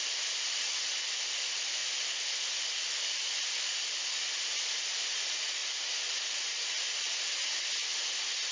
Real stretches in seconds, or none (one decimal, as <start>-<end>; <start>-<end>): 0.0-8.5